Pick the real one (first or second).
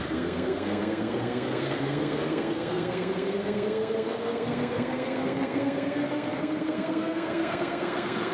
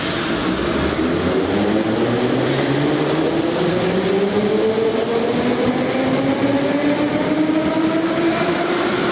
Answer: second